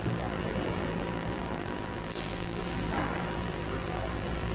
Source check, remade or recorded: remade